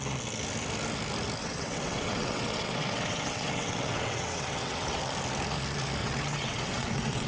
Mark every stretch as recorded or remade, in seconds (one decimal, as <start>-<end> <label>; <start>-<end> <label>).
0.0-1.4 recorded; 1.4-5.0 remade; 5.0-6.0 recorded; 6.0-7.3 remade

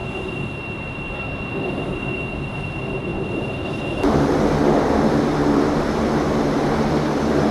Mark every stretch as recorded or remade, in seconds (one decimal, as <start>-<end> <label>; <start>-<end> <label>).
0.0-7.5 recorded

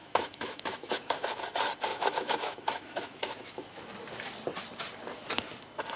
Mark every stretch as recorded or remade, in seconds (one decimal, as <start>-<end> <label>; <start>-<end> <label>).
0.0-0.9 remade; 0.9-1.9 recorded; 1.9-3.8 remade; 3.8-6.0 recorded

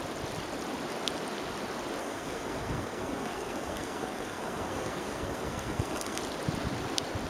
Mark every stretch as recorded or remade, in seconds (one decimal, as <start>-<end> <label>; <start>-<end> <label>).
0.0-2.0 recorded; 2.0-6.2 remade; 6.2-7.3 recorded

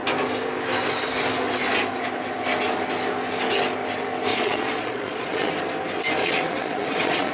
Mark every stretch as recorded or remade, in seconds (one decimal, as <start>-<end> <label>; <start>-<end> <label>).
0.0-4.3 recorded; 4.3-5.5 remade; 5.5-6.2 recorded; 6.2-7.3 remade

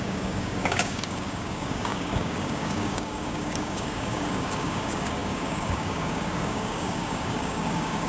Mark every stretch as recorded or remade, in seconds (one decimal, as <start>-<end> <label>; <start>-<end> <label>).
0.0-8.1 remade